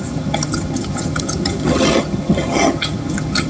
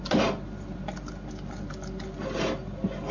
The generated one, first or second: first